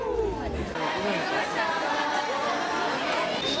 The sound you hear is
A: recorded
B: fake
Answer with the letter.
A